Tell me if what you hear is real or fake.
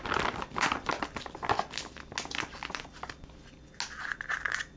real